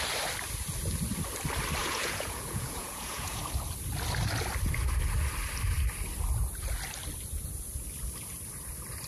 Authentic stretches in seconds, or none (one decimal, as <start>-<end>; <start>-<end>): 0.0-1.8; 3.4-9.1